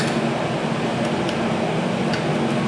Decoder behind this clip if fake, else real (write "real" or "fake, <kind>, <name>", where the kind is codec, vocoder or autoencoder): real